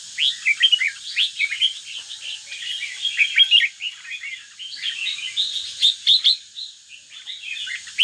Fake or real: real